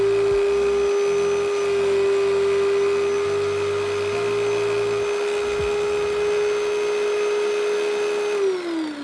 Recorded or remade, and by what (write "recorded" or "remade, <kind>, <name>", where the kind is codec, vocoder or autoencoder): recorded